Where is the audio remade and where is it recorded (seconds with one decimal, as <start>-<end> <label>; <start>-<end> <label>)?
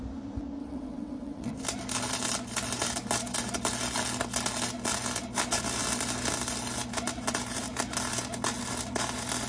0.0-0.6 recorded; 0.6-1.5 remade; 1.5-9.5 recorded